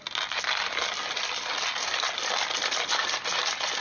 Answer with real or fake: real